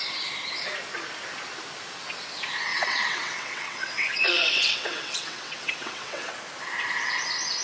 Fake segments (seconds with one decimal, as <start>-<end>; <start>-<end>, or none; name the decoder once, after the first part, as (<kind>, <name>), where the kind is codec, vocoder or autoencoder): 2.7-6.3 (vocoder, WaveNeXt)